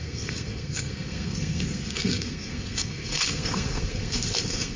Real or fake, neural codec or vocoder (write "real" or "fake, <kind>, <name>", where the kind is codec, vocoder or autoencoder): fake, codec, SNAC